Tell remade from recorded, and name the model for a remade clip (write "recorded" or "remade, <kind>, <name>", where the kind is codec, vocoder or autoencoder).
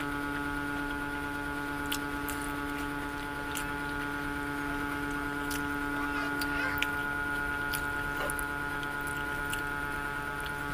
recorded